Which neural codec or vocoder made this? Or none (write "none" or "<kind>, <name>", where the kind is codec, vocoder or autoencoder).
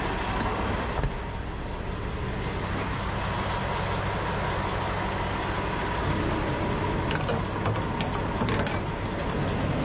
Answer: none